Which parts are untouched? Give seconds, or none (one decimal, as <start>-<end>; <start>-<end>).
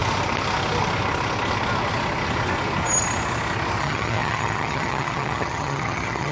0.0-3.8